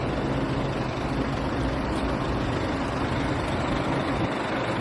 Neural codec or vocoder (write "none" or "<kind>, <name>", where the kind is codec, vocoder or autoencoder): none